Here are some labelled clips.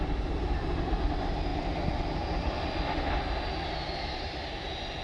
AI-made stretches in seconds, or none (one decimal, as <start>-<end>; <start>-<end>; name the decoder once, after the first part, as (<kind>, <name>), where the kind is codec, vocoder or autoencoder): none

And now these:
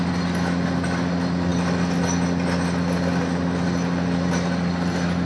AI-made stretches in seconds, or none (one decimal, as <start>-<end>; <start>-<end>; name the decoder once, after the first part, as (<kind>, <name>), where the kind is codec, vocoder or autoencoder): none

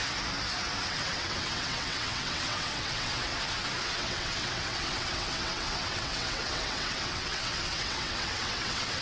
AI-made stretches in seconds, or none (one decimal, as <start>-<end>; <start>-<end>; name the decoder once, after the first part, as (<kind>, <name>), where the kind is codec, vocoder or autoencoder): 0.9-3.3 (vocoder, WaveNeXt); 4.0-9.0

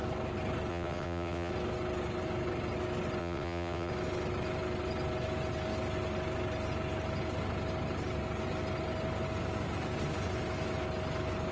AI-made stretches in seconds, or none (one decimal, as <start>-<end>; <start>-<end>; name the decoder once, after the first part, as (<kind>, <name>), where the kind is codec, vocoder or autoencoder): 0.7-1.5 (vocoder, WaveNeXt); 3.2-3.9

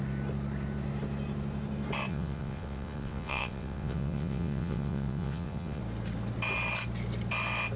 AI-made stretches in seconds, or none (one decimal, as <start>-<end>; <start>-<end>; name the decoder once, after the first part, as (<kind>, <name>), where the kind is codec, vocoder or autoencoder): 2.1-5.8 (vocoder, WaveNeXt)

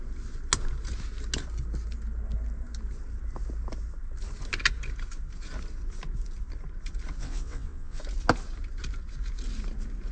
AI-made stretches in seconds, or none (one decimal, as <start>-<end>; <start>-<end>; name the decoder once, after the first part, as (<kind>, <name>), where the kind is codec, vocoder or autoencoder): 7.2-8.0 (vocoder, WaveNeXt)

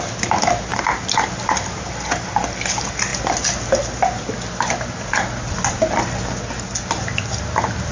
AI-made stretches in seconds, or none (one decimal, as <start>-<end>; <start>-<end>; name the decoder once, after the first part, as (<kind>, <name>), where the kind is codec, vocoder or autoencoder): none

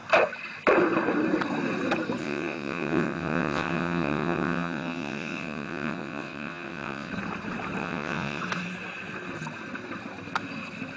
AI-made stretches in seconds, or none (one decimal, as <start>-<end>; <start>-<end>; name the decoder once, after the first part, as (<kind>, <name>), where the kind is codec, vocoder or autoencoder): 2.2-7.1 (vocoder, WaveNeXt); 7.8-8.4